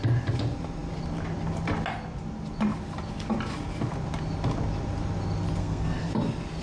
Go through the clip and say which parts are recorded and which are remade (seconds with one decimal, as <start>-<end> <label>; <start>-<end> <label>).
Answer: 0.0-5.6 recorded; 5.6-6.1 remade; 6.1-6.6 recorded